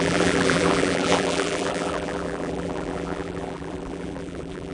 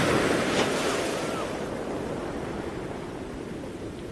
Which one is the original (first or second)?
second